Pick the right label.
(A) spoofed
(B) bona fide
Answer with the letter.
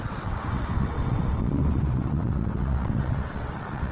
A